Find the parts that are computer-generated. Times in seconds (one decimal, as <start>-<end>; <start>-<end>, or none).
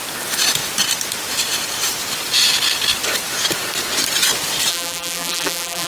4.7-5.9